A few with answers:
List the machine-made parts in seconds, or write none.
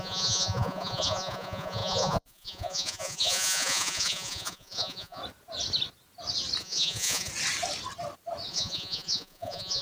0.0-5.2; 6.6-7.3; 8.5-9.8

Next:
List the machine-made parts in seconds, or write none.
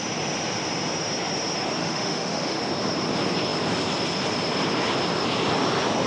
1.8-2.6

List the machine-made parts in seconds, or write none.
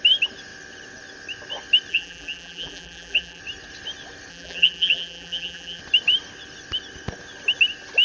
1.9-3.4; 4.3-5.8